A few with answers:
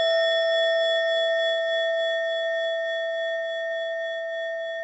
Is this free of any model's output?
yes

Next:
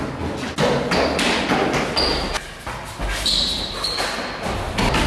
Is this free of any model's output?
yes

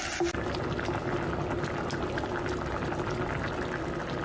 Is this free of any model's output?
yes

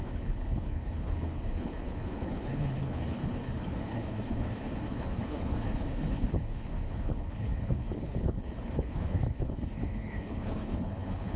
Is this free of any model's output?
no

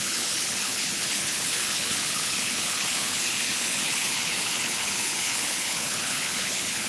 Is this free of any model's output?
no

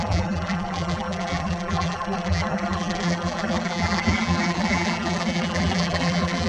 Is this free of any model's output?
no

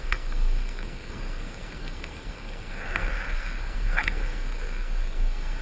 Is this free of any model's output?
no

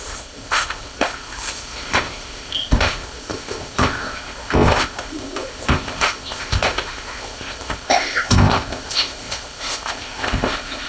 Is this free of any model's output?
no